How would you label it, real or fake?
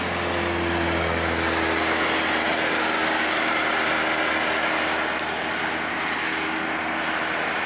real